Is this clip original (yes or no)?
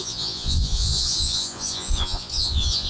no